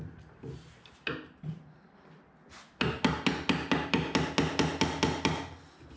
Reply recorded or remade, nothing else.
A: recorded